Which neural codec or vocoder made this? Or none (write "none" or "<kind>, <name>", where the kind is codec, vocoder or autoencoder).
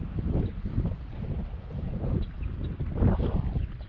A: none